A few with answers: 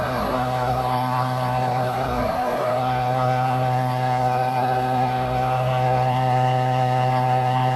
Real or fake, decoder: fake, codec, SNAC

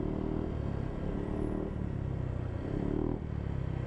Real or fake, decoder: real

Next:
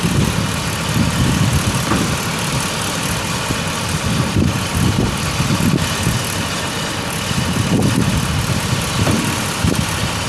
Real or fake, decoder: real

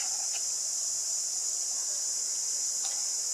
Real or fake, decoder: real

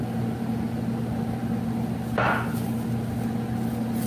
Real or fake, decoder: real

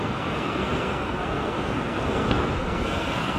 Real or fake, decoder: fake, codec, SNAC